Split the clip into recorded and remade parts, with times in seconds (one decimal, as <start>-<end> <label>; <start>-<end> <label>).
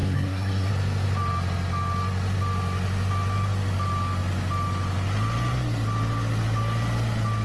0.0-0.7 remade; 0.7-7.4 recorded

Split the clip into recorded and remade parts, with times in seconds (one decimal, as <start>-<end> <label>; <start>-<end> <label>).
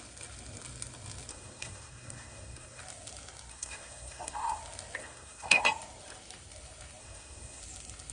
0.0-1.3 recorded; 1.3-2.8 remade; 2.8-3.5 recorded; 3.5-4.6 remade; 4.6-5.0 recorded; 5.0-5.6 remade; 5.6-7.0 recorded; 7.0-7.6 remade; 7.6-8.1 recorded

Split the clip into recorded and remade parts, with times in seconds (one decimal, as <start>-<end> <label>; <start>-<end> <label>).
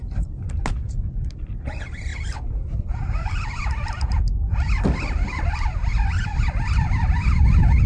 0.0-7.9 recorded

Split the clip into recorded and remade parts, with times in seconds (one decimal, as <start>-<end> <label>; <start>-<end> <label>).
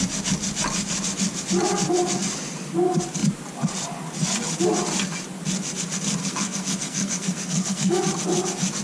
0.0-6.2 recorded; 6.2-8.0 remade; 8.0-8.8 recorded